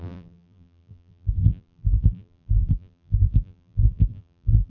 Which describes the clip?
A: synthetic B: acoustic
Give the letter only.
A